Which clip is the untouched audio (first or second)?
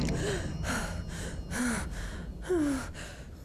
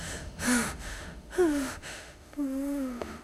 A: first